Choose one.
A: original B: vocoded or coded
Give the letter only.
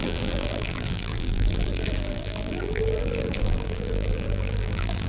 B